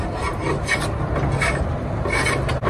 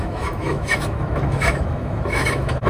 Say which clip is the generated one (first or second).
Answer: second